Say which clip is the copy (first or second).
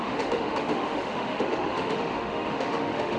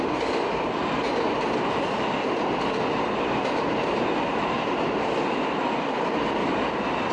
first